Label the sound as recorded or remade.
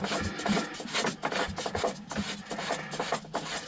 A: recorded